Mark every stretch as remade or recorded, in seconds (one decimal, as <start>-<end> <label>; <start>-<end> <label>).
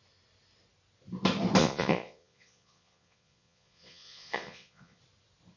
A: 0.0-1.6 recorded; 1.6-5.0 remade; 5.0-5.6 recorded